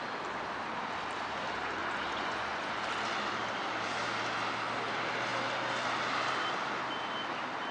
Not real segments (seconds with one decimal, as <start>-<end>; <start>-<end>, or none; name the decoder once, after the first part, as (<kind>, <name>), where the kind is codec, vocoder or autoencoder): 1.8-2.8 (vocoder, Vocos)